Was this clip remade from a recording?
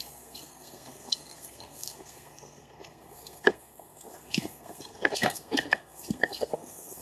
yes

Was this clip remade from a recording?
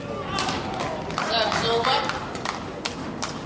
no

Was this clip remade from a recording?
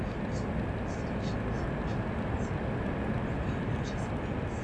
no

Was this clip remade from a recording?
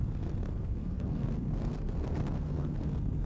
yes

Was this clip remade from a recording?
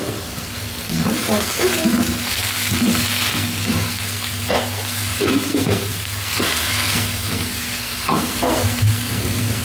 yes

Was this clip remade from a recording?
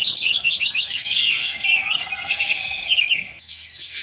yes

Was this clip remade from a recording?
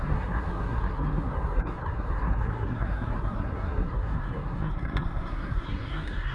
yes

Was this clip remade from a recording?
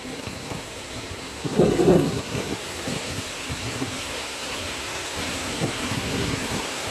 yes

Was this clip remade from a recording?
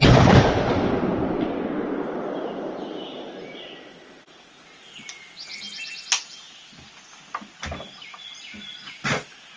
no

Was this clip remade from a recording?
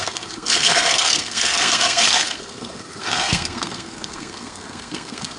yes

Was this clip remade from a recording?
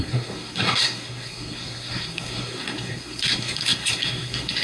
yes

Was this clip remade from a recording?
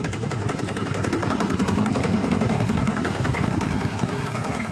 yes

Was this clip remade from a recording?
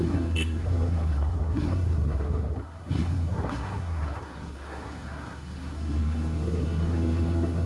yes